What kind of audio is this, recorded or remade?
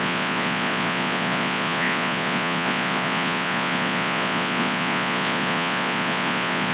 remade